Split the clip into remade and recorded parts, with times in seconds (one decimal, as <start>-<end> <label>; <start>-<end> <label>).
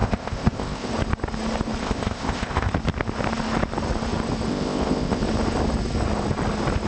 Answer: 0.0-0.9 remade; 0.9-1.8 recorded; 1.8-2.7 remade; 2.7-4.5 recorded; 4.5-5.2 remade; 5.2-6.9 recorded